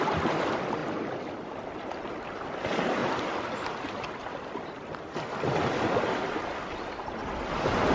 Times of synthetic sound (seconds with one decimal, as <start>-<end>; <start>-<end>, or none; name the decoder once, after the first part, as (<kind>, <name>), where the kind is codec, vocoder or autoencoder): 0.0-0.8 (vocoder, BigVGAN v2); 1.3-3.0